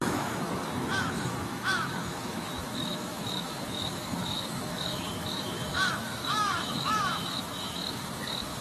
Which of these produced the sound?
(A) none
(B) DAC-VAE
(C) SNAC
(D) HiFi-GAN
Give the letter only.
B